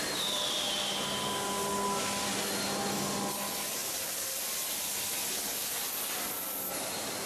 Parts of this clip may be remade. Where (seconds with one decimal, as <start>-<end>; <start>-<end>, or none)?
none